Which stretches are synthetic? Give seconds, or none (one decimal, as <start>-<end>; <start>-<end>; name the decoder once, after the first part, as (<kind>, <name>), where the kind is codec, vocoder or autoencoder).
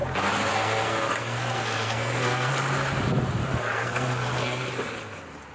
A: 0.0-2.5 (codec, SNAC); 3.4-4.7